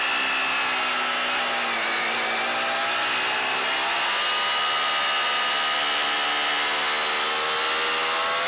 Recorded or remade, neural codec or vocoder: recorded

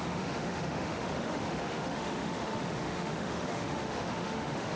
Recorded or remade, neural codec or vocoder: remade, autoencoder, DAC-VAE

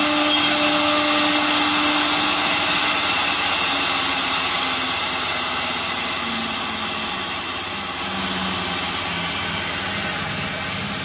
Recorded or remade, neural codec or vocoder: recorded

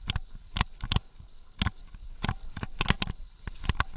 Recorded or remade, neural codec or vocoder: recorded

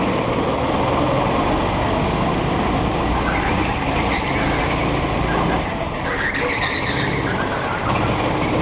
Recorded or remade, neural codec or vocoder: recorded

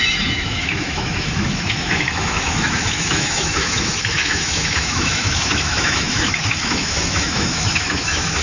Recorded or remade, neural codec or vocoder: remade, autoencoder, DAC-VAE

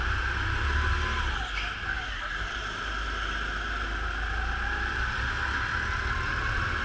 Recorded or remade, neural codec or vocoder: recorded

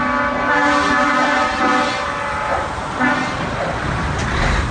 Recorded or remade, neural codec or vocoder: recorded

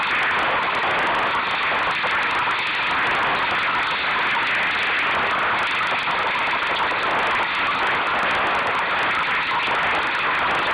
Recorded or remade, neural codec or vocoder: recorded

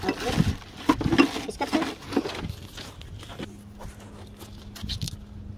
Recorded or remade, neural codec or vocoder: recorded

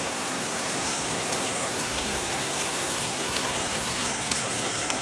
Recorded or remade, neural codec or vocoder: remade, codec, SNAC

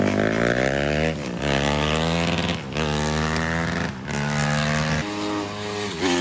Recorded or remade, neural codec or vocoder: recorded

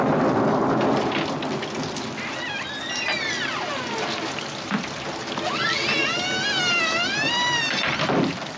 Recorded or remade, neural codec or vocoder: recorded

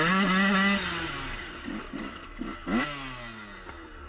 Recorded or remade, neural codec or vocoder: recorded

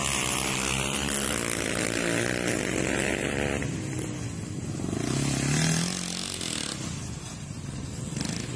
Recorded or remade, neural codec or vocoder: recorded